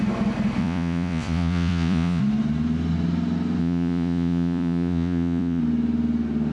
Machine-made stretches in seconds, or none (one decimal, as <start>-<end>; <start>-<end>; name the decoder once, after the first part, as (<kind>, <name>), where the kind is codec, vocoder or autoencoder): 0.6-2.2 (vocoder, Vocos); 3.6-5.6